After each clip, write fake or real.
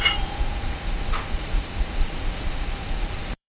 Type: fake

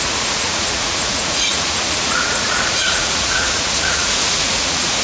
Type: fake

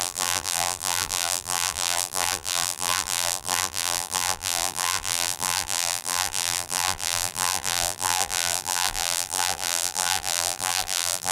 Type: fake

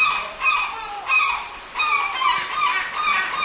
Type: fake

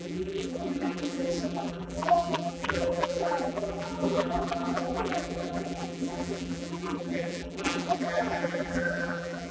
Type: fake